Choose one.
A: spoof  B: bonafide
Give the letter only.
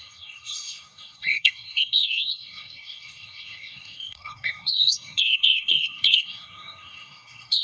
A